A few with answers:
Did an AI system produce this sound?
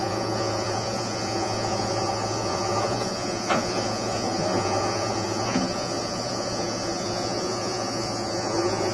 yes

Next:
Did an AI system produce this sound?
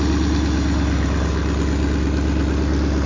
no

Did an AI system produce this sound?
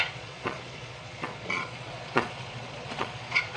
yes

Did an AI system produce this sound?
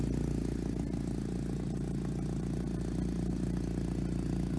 no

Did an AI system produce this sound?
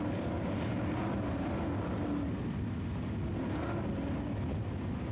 no